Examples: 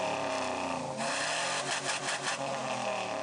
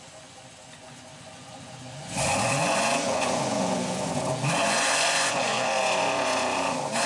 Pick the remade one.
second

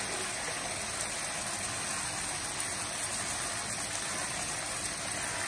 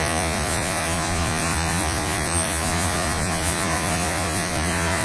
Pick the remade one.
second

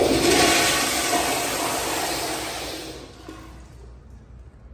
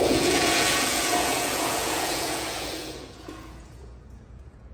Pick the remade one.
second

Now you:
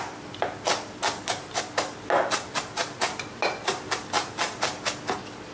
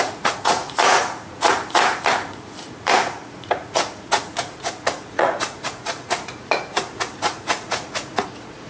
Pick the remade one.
second